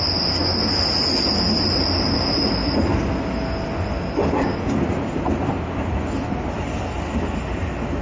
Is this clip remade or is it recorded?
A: recorded